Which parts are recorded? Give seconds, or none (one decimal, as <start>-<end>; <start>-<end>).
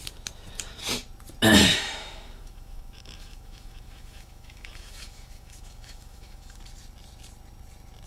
0.0-1.7; 6.6-8.1